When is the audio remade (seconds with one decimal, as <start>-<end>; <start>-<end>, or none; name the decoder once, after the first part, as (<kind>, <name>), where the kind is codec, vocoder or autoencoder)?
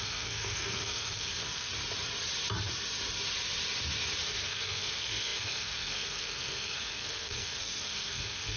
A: 0.0-1.7 (codec, SNAC); 4.2-8.6